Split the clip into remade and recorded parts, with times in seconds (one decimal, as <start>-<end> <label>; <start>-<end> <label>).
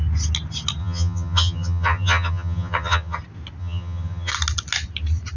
0.0-0.8 recorded; 0.8-3.2 remade; 3.2-3.6 recorded; 3.6-4.3 remade; 4.3-5.4 recorded